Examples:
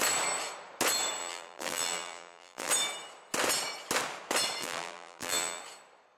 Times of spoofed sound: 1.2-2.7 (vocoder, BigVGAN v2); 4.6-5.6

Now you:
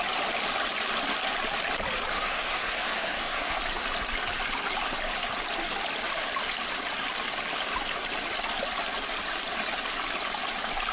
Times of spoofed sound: 2.1-3.6 (codec, SNAC)

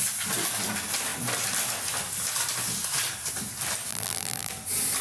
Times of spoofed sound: 3.9-4.5 (vocoder, BigVGAN v2)

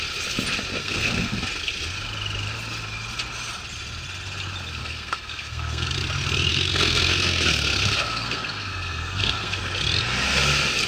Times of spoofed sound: 0.8-1.4 (codec, SNAC); 4.8-5.9; 6.5-9.6